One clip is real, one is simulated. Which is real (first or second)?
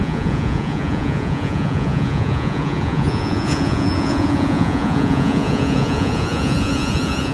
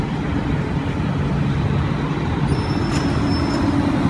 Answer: second